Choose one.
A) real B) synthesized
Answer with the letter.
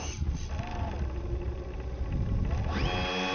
A